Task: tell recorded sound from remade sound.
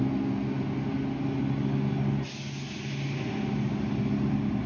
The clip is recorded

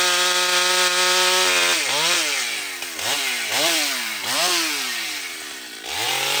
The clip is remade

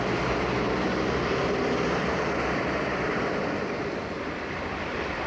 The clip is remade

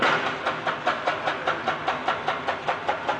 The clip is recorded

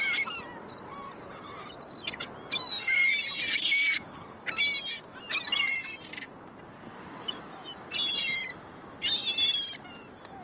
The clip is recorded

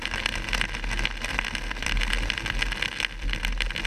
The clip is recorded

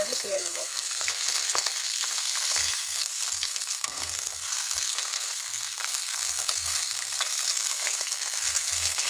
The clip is remade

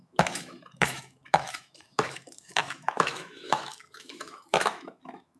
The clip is remade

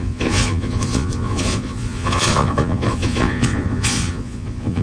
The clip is remade